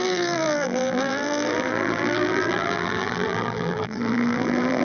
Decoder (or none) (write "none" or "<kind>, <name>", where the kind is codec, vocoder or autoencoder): vocoder, BigVGAN v2